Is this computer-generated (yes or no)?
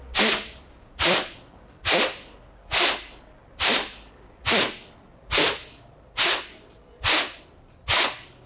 no